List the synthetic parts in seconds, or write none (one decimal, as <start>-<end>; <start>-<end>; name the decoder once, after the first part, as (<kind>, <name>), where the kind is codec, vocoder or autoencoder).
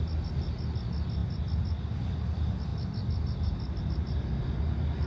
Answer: 2.7-3.8 (vocoder, BigVGAN v2)